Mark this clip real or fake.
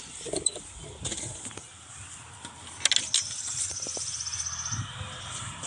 real